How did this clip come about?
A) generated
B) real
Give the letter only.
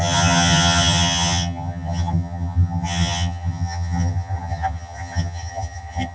A